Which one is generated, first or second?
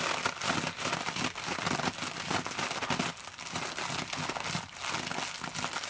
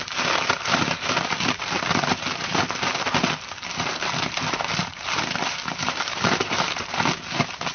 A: second